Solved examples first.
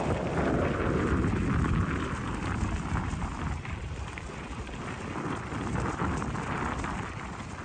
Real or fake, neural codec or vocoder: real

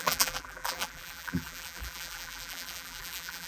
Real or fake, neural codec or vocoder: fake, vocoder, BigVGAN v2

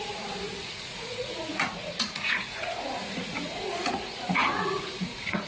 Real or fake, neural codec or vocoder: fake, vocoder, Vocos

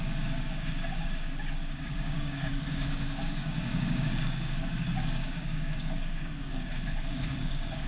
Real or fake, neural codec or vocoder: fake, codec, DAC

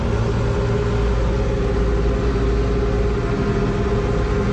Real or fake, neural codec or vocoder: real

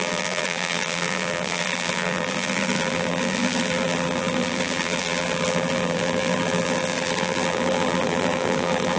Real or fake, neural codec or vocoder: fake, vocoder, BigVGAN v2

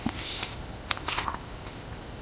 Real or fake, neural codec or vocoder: fake, codec, ZipCodec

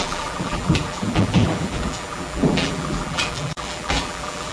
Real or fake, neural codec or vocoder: fake, vocoder, BigVGAN v2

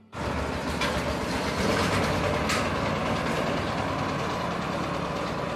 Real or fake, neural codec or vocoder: real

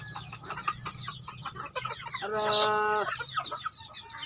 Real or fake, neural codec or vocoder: real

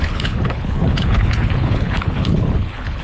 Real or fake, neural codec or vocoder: fake, codec, HILCodec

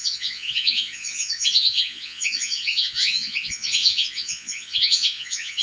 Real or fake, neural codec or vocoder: fake, vocoder, Vocos